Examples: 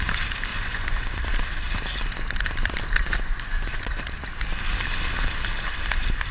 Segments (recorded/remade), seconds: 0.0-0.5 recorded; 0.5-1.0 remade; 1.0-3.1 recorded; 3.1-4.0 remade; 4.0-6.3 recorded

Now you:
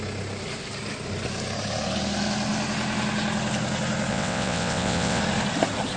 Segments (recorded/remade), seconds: 0.0-4.1 recorded; 4.1-5.2 remade; 5.2-6.0 recorded

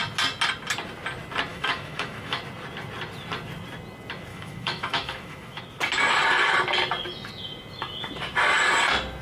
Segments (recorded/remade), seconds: 0.0-1.5 recorded; 1.5-2.4 remade; 2.4-4.3 recorded; 4.3-5.6 remade; 5.6-9.2 recorded

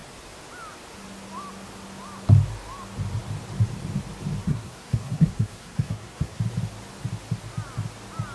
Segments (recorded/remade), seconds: 0.0-4.4 recorded; 4.4-6.4 remade; 6.4-8.3 recorded

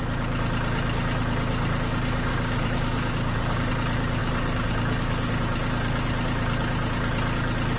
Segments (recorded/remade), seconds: 0.0-2.3 recorded; 2.3-3.7 remade; 3.7-4.2 recorded; 4.2-5.3 remade; 5.3-7.8 recorded

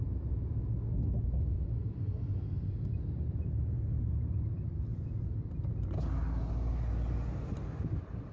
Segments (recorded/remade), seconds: 0.0-8.3 recorded

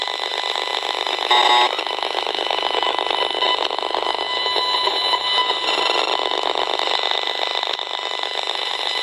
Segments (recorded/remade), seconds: 0.0-9.0 recorded